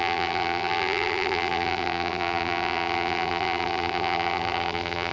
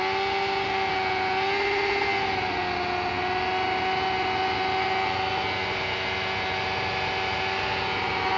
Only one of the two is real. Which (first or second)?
second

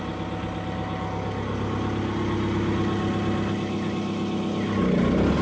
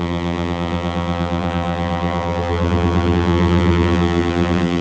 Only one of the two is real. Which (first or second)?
first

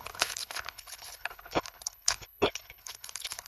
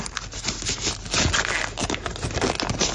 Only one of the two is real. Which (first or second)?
second